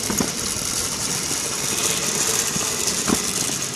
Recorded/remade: recorded